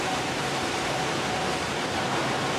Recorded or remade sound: remade